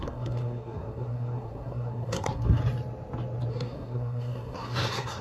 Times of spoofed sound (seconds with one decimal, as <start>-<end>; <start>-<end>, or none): 0.0-2.6; 3.5-5.2